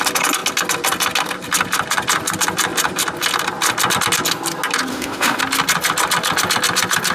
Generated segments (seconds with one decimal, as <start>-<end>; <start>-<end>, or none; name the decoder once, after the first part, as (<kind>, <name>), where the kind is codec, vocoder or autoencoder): 4.9-5.4 (autoencoder, DAC-VAE)